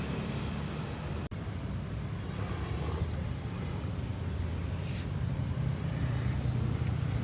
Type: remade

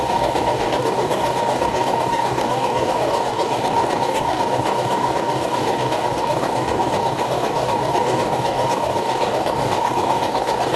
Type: remade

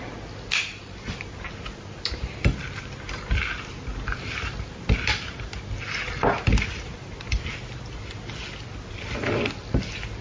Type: recorded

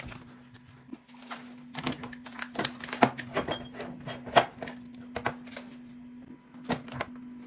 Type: recorded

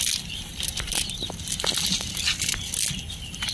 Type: recorded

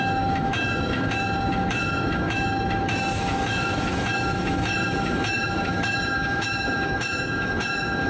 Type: remade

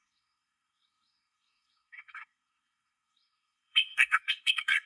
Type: remade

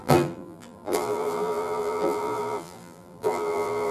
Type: remade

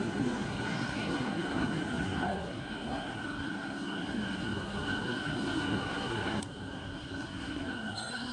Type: remade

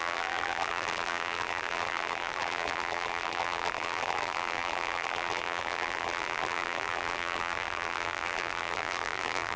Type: remade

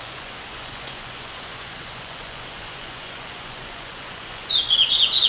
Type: remade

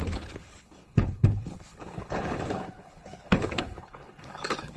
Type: remade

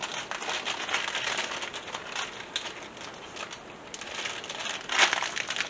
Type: recorded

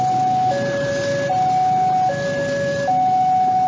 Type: recorded